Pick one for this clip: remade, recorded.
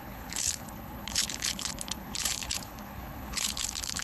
remade